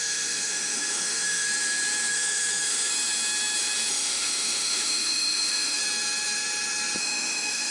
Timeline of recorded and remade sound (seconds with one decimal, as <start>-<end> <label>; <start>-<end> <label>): 0.0-1.5 remade; 1.5-2.1 recorded; 2.1-2.9 remade; 2.9-3.9 recorded; 3.9-5.8 remade; 5.8-7.0 recorded; 7.0-7.7 remade